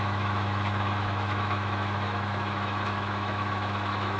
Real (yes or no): no